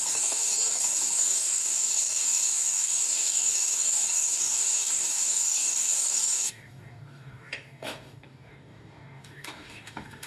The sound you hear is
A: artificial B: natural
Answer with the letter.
A